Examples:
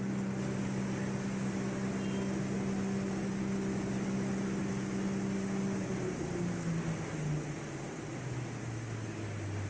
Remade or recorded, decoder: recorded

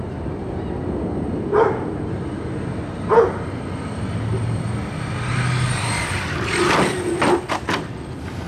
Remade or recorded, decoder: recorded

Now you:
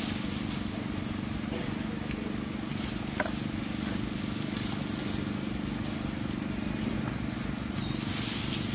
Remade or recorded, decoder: recorded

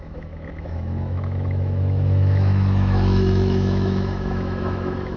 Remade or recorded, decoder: remade, autoencoder, DAC-VAE